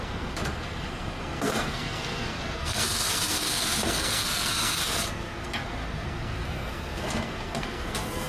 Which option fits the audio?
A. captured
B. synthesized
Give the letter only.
B